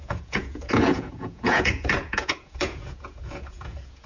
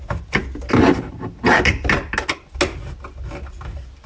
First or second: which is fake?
first